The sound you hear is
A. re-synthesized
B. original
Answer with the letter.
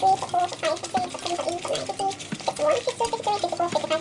B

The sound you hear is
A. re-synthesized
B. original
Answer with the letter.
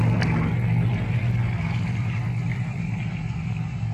B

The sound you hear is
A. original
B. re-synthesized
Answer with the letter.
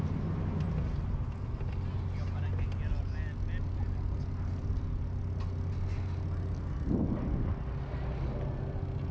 A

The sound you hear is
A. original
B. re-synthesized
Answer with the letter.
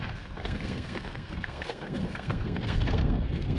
B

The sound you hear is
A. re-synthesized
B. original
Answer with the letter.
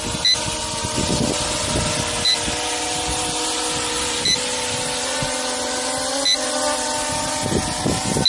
B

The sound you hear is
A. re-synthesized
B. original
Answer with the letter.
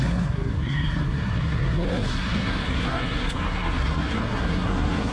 A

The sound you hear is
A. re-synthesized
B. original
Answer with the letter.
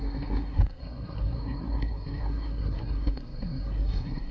A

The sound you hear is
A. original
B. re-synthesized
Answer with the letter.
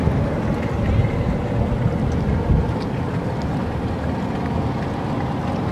A